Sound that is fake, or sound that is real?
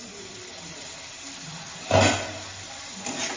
real